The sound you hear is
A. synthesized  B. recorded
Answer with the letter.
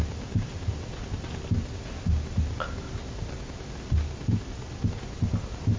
B